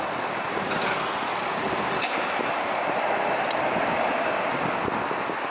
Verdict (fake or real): real